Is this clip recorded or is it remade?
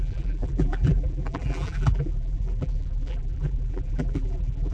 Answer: remade